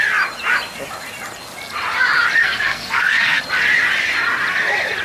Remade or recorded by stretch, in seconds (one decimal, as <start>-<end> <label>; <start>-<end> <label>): 0.0-2.4 recorded; 2.4-3.4 remade; 3.4-5.0 recorded